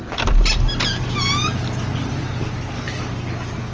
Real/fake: real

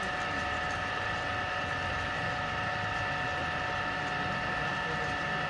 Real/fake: real